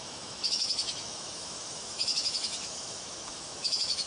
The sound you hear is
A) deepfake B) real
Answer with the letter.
A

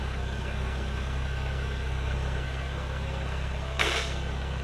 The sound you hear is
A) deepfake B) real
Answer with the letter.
A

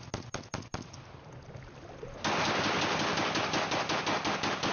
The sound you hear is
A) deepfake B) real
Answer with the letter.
B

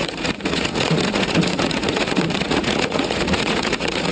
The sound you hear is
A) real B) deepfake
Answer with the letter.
B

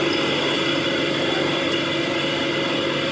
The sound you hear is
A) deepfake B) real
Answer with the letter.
B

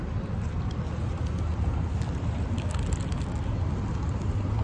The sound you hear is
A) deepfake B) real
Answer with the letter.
B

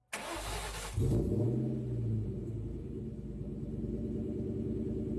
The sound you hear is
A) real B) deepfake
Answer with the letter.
A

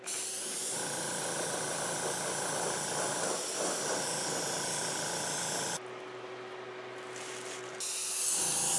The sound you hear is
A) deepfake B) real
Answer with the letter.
B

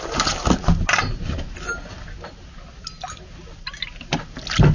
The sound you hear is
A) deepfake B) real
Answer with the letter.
B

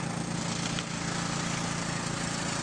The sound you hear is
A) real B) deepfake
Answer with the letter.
A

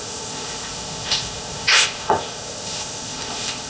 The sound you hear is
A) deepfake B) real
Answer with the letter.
A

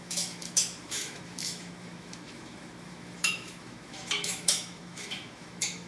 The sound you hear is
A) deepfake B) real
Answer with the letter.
A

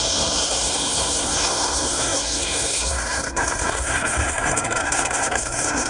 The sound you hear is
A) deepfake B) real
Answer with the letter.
A